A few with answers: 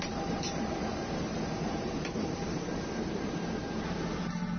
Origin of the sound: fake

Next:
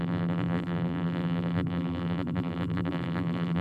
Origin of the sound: fake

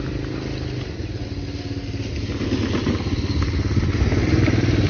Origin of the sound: real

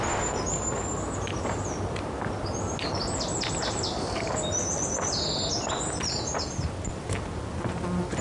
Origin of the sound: real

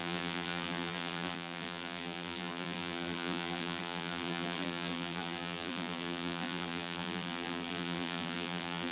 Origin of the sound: fake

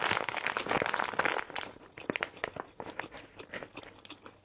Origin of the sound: real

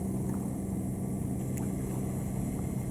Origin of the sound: real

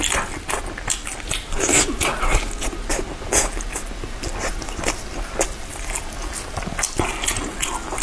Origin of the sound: real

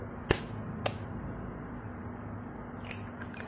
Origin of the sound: real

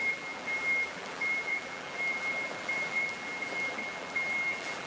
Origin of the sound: fake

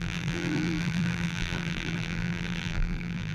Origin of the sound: fake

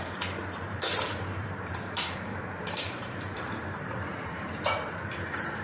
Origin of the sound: fake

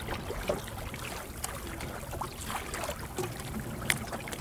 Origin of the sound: real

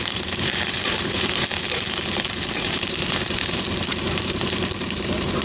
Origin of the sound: fake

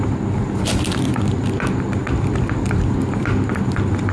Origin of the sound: real